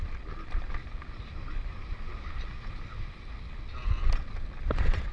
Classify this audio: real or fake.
fake